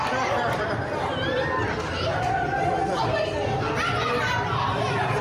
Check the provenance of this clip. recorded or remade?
recorded